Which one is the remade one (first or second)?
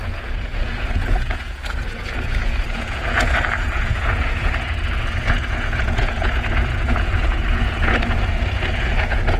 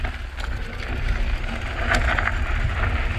first